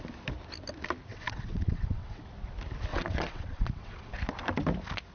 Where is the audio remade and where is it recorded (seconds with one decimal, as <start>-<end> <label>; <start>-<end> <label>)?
0.0-1.1 recorded; 1.1-2.2 remade; 2.2-2.9 recorded; 2.9-4.1 remade; 4.1-5.1 recorded